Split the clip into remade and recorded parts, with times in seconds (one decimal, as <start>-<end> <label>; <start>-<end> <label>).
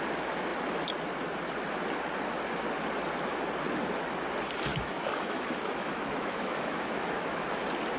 0.0-4.7 recorded; 4.7-7.4 remade; 7.4-8.0 recorded